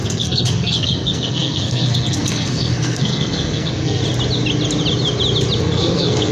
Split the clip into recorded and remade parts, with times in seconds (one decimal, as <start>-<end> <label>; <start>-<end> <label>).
0.0-4.0 remade; 4.0-5.6 recorded; 5.6-6.3 remade